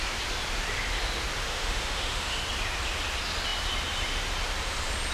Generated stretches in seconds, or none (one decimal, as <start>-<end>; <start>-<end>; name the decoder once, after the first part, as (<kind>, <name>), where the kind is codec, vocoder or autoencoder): 1.5-2.4 (autoencoder, DAC-VAE)